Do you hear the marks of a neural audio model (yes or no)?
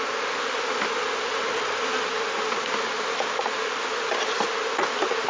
no